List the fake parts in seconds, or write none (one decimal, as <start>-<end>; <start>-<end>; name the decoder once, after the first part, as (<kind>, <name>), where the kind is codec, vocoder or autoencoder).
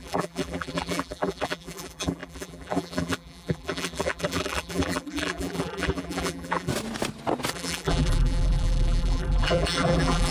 0.0-6.7 (vocoder, BigVGAN v2); 7.5-10.3